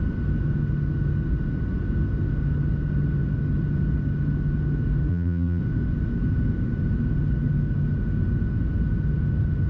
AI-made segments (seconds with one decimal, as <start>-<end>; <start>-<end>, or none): 5.1-5.6